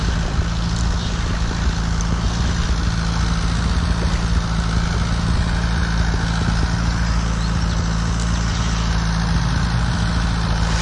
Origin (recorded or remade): recorded